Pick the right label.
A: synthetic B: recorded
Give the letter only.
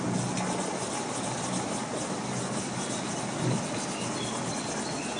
B